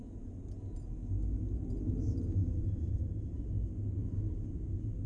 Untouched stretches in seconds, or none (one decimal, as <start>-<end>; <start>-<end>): 0.0-5.1